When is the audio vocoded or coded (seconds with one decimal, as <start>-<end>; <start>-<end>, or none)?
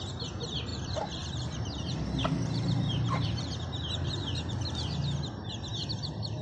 0.7-4.5